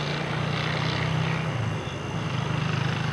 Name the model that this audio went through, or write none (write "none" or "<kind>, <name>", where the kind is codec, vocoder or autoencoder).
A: none